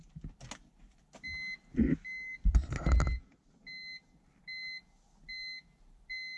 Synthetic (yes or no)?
no